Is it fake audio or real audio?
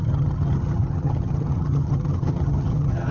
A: fake